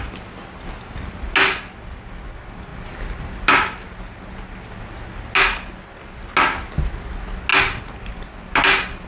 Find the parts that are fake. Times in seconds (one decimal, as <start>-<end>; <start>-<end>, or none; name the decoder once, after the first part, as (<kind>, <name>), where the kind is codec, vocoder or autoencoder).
none